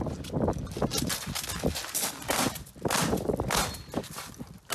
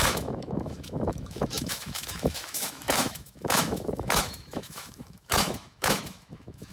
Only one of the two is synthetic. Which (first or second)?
second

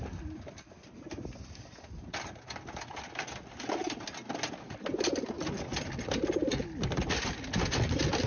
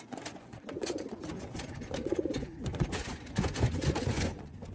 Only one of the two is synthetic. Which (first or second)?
second